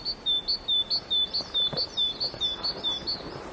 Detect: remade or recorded recorded